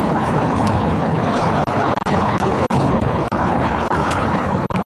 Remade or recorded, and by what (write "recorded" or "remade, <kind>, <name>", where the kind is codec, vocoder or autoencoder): remade, codec, HILCodec